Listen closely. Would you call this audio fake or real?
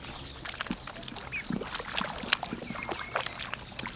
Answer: real